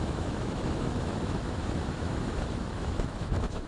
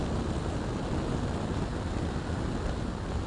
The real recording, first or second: second